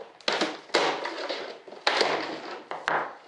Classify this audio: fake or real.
real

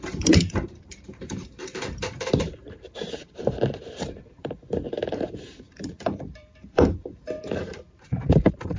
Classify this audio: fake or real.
fake